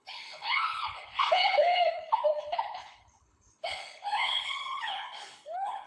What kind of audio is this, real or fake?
fake